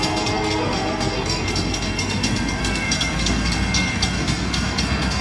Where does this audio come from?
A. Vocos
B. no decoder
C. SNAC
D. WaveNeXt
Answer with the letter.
C